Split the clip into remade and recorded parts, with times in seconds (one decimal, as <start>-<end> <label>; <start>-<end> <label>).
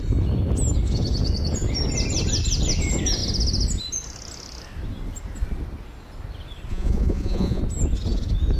0.0-6.7 recorded; 6.7-7.6 remade; 7.6-8.6 recorded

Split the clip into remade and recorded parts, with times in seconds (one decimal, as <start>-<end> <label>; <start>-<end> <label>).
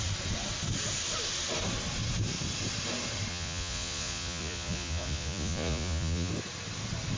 0.0-3.3 recorded; 3.3-6.3 remade; 6.3-7.2 recorded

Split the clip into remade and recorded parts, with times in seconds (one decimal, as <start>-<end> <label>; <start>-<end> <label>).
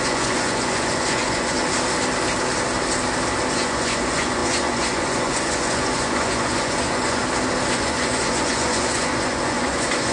0.0-1.6 remade; 1.6-3.5 recorded; 3.5-7.2 remade; 7.2-7.7 recorded; 7.7-10.1 remade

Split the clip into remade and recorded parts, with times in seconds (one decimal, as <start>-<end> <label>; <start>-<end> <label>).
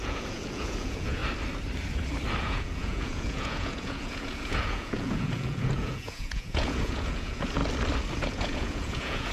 0.0-1.2 remade; 1.2-2.4 recorded; 2.4-7.6 remade; 7.6-8.2 recorded; 8.2-9.3 remade